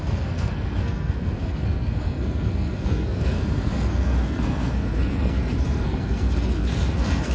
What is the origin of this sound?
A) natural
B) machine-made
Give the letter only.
B